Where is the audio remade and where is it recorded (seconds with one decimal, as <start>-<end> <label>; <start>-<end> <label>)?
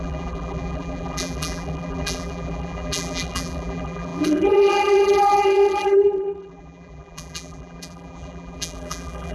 0.0-9.3 remade